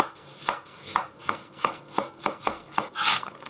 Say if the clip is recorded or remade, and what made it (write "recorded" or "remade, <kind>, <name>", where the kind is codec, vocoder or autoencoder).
remade, codec, SNAC